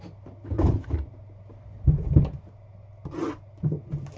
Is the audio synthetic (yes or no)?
no